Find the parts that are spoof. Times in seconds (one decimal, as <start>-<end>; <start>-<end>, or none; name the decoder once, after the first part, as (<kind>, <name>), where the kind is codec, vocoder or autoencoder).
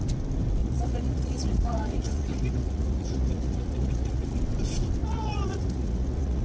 0.6-4.4 (vocoder, Vocos); 5.0-6.4